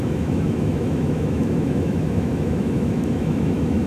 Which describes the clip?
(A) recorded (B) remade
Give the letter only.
B